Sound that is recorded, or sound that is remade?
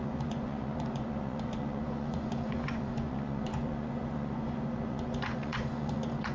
remade